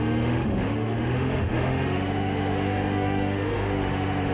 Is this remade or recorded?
remade